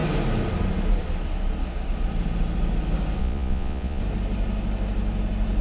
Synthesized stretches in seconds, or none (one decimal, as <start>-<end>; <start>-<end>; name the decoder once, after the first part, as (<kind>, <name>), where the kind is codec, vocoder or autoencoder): 3.2-4.0 (vocoder, Vocos)